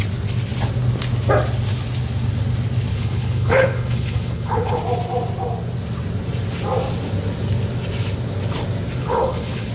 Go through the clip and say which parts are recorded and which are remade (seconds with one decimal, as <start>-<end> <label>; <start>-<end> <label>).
0.0-2.9 recorded; 2.9-4.8 remade; 4.8-9.0 recorded; 9.0-9.7 remade